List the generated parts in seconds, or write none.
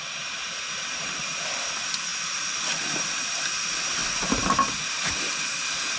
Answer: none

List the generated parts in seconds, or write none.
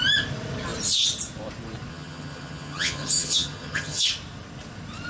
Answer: 1.9-4.1 (vocoder, HiFi-GAN)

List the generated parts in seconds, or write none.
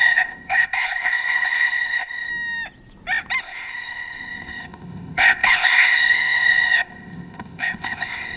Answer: 0.0-2.3 (codec, ZipCodec); 3.4-8.4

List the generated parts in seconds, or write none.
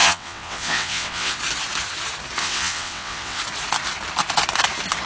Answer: 0.0-1.4 (vocoder, WaveNeXt); 2.4-3.4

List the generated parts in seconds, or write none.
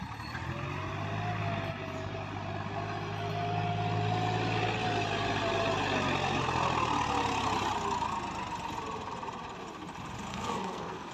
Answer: 10.3-11.1 (codec, SNAC)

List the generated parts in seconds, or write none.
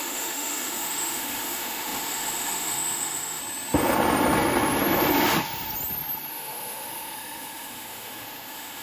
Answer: 0.0-3.4 (autoencoder, DAC-VAE); 6.3-8.8